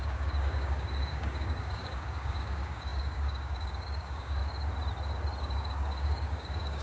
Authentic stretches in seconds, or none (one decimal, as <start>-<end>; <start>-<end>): 4.4-5.4